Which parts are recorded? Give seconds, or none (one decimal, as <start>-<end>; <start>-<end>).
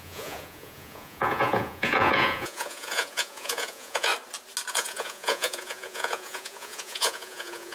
4.1-4.7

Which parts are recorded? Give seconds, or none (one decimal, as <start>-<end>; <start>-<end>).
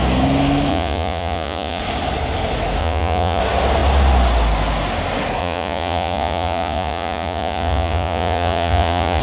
0.0-0.7; 1.8-2.8; 3.4-5.4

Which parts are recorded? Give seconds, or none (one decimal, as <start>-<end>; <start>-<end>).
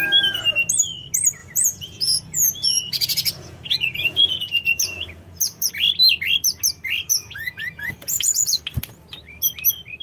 0.0-1.4; 5.7-7.1; 8.6-10.0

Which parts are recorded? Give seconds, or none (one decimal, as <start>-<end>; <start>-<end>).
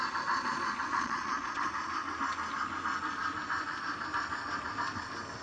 0.0-0.9; 1.6-5.4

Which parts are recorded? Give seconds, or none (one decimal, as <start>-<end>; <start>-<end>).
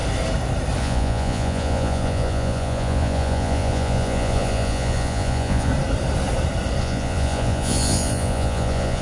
0.0-0.8; 5.7-6.8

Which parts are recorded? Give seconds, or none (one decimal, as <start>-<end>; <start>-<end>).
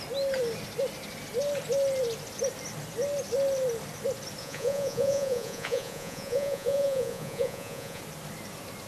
0.0-4.4; 8.0-8.9